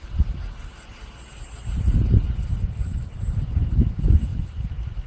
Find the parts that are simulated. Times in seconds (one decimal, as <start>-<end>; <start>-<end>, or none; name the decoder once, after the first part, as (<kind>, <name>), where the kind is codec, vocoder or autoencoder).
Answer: none